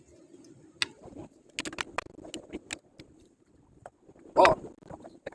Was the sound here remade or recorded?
recorded